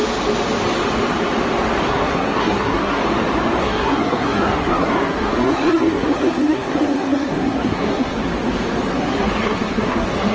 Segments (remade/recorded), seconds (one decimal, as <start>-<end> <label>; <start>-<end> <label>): 0.0-1.9 recorded; 1.9-3.0 remade; 3.0-3.6 recorded; 3.6-8.2 remade; 8.2-8.9 recorded; 8.9-10.3 remade